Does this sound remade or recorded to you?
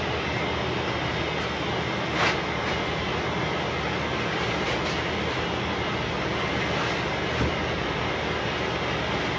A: recorded